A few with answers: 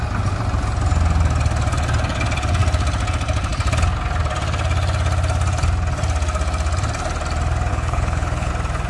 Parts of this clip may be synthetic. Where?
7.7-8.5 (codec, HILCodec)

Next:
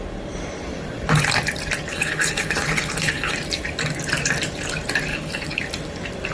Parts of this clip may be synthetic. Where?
1.9-3.3 (codec, HILCodec); 5.1-5.6

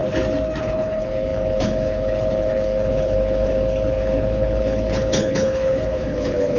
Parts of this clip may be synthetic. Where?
0.6-6.6 (codec, HILCodec)

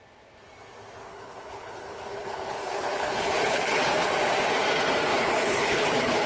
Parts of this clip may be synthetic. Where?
1.1-4.1 (codec, HILCodec); 5.1-6.3

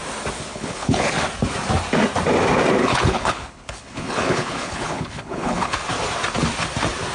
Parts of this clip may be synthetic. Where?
0.5-1.1 (codec, HILCodec); 2.8-5.9

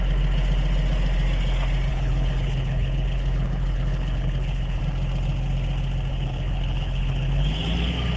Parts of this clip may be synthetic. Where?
1.9-4.8 (codec, HILCodec); 6.1-7.6

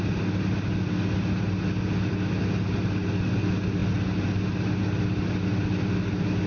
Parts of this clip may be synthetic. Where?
none